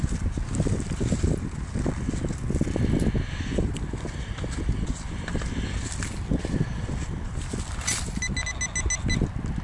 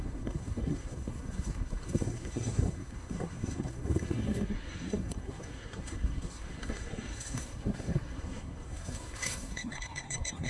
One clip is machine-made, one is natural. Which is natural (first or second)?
first